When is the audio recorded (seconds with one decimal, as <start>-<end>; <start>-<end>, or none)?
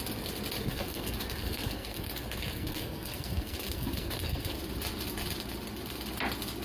0.0-0.6; 4.6-6.6